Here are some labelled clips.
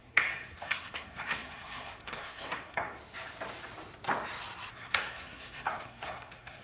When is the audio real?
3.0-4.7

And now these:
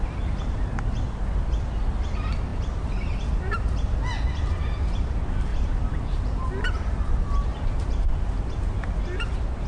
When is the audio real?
0.0-5.5; 6.5-7.5; 8.1-9.7

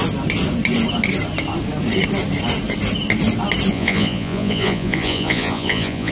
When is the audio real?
0.0-3.7

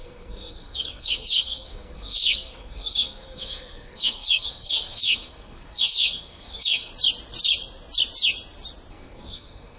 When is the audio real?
6.9-8.9

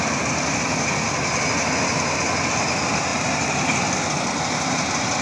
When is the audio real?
0.0-5.2

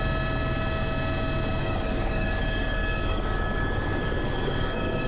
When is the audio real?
0.0-1.6

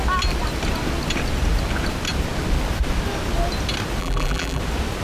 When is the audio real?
0.0-4.0; 4.6-5.0